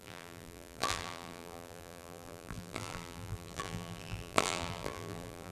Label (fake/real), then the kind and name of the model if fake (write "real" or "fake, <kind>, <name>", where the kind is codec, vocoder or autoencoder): fake, vocoder, BigVGAN v2